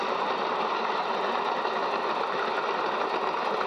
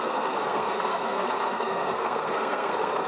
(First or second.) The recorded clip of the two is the first